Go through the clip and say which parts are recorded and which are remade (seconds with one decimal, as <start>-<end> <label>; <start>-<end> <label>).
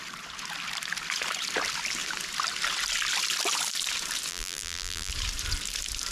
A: 0.0-4.3 recorded; 4.3-5.1 remade; 5.1-6.1 recorded